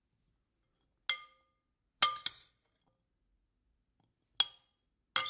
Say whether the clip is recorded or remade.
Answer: recorded